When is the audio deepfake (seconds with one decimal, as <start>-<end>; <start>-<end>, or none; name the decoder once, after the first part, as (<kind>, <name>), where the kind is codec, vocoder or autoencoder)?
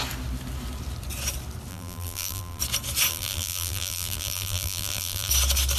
1.7-2.6 (vocoder, BigVGAN v2); 3.1-5.3